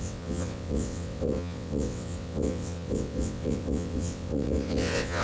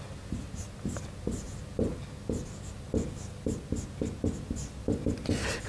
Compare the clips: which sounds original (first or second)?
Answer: second